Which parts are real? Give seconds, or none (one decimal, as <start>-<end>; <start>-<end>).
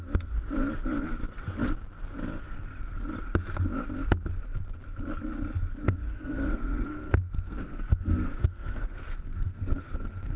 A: 0.0-5.8